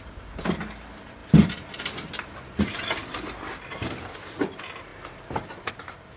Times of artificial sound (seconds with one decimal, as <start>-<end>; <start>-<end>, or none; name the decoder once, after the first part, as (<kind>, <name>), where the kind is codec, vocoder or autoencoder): 1.2-2.6 (vocoder, BigVGAN v2)